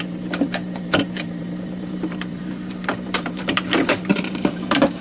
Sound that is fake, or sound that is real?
fake